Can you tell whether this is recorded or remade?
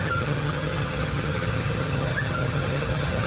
remade